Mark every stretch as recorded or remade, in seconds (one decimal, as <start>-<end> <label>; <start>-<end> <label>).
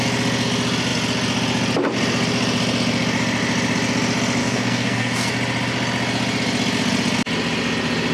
0.0-4.4 recorded; 4.4-5.3 remade; 5.3-8.1 recorded